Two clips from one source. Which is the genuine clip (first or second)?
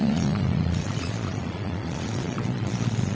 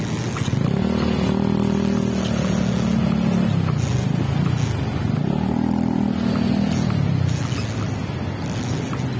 second